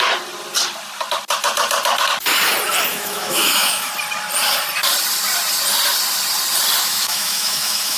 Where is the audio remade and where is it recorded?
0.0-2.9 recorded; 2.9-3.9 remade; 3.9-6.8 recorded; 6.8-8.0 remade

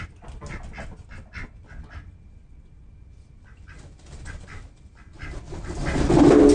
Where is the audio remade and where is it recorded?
0.0-6.5 recorded

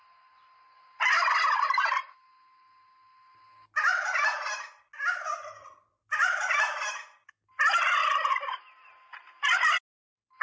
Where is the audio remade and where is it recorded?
0.0-10.4 recorded